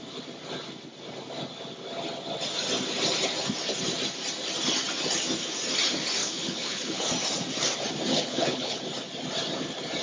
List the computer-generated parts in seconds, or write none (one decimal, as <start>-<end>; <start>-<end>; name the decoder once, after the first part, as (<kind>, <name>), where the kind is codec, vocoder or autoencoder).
6.2-7.0 (codec, HILCodec); 8.1-8.8